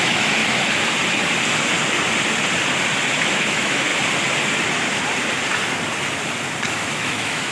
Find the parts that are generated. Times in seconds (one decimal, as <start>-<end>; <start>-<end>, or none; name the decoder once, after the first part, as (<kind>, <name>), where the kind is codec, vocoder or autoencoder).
0.0-0.4 (autoencoder, DAC-VAE); 3.2-3.9; 6.7-7.5